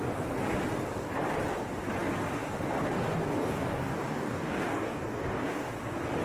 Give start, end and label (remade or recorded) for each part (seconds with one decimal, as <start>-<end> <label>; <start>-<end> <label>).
0.0-3.4 recorded; 3.4-5.7 remade; 5.7-6.2 recorded